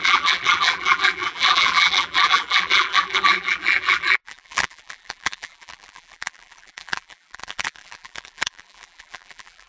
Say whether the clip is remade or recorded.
remade